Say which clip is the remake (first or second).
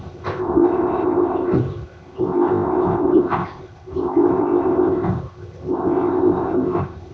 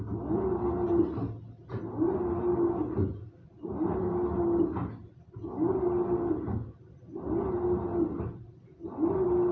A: first